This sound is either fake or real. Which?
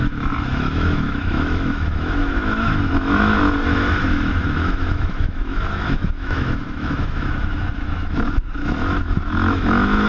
fake